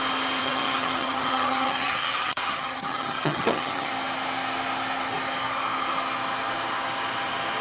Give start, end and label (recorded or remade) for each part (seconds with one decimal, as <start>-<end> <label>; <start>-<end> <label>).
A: 0.0-0.4 recorded; 0.4-3.9 remade; 3.9-7.6 recorded